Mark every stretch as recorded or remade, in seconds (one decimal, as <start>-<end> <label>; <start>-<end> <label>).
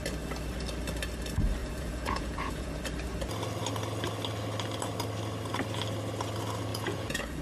0.0-1.6 recorded; 1.6-2.8 remade; 2.8-6.7 recorded; 6.7-7.4 remade